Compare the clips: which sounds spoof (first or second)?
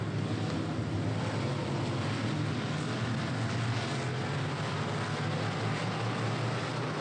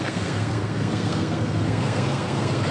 second